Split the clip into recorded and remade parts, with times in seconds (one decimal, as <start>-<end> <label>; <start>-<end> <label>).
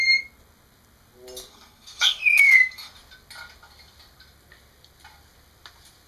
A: 0.0-1.5 recorded; 1.5-2.9 remade; 2.9-6.1 recorded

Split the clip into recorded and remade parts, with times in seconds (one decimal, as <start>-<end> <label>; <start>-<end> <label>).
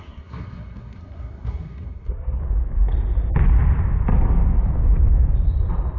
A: 0.0-2.4 remade; 2.4-6.0 recorded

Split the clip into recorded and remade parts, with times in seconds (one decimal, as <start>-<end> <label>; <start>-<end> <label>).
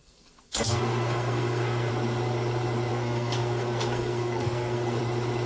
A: 0.0-1.9 remade; 1.9-2.9 recorded; 2.9-5.0 remade; 5.0-5.5 recorded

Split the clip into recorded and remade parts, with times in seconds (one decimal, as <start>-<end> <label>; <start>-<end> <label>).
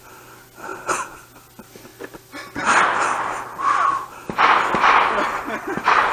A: 0.0-6.1 recorded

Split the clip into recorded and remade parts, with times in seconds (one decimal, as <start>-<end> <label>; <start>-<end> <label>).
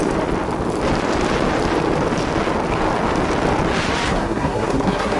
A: 0.0-4.1 recorded; 4.1-5.2 remade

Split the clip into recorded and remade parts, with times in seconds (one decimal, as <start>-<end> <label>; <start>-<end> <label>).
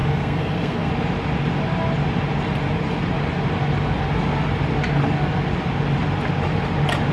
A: 0.0-0.9 remade; 0.9-7.1 recorded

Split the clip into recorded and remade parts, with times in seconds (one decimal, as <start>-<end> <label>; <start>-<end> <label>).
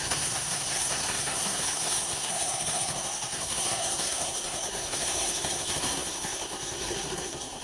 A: 0.0-7.6 remade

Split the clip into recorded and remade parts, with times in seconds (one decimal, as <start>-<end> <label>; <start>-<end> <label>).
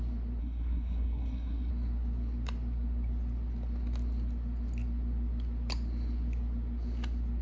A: 0.0-0.4 recorded; 0.4-1.7 remade; 1.7-7.4 recorded